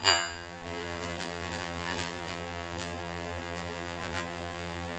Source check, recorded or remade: remade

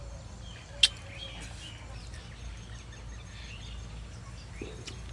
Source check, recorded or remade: recorded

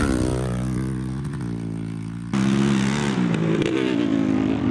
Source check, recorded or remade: recorded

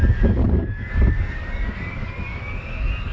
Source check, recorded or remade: remade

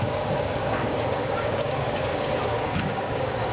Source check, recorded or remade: remade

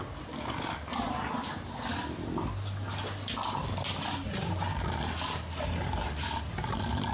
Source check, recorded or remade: recorded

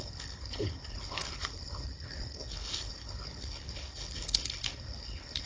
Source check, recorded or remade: remade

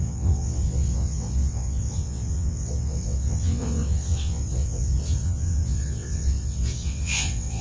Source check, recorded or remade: remade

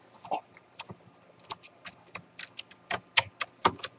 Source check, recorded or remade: recorded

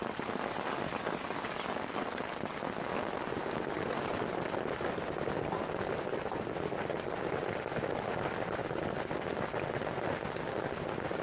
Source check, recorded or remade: recorded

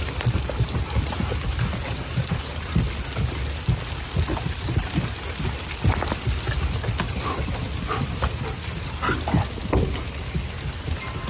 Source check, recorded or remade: recorded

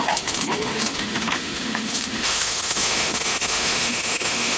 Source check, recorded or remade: remade